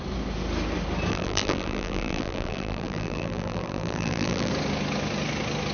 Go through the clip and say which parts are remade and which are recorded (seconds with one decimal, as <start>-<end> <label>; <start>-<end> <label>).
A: 0.0-1.1 recorded; 1.1-4.5 remade; 4.5-5.7 recorded